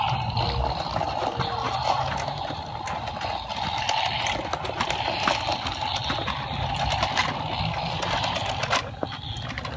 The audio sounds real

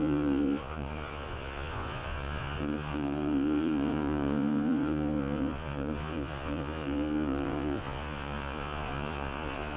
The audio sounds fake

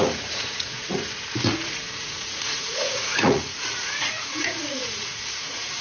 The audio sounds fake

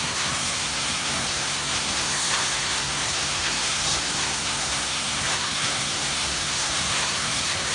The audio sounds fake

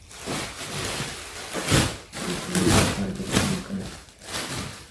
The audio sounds real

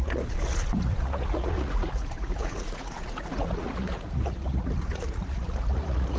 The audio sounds fake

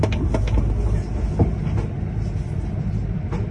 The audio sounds real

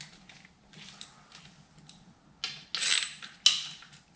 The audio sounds real